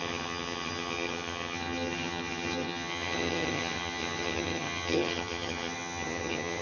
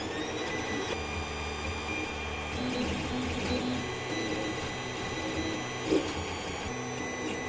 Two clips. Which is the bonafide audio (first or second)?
second